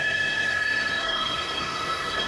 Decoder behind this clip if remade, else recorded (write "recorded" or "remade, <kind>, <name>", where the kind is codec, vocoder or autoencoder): remade, codec, SNAC